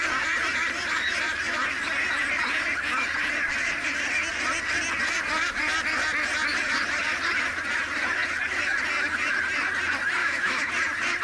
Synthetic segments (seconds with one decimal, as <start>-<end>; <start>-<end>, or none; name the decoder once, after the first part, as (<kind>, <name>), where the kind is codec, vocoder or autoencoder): 10.2-10.7 (autoencoder, DAC-VAE)